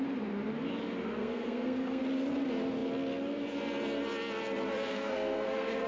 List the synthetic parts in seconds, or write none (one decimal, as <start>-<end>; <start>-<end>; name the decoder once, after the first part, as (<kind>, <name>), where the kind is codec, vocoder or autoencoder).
1.2-2.0 (codec, SNAC); 4.9-5.9

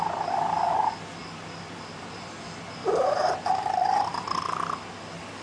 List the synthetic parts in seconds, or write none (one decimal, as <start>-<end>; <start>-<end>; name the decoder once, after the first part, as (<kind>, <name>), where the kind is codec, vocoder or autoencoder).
2.8-4.5 (vocoder, BigVGAN v2)

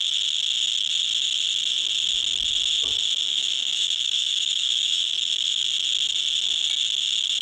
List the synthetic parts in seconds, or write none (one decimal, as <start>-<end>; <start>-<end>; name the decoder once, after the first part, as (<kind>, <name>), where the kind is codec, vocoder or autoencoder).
3.2-5.6 (autoencoder, DAC-VAE)

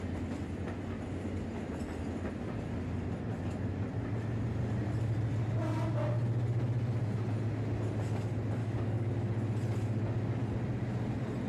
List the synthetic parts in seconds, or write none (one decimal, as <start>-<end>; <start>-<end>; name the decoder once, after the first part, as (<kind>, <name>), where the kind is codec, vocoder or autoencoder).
8.6-9.1 (codec, DAC)

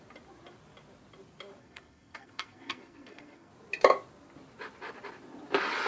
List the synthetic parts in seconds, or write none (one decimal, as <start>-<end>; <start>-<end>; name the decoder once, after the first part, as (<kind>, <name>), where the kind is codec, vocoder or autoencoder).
1.6-3.5 (codec, SNAC)